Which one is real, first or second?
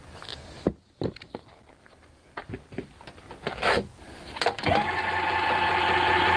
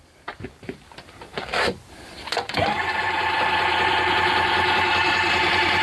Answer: first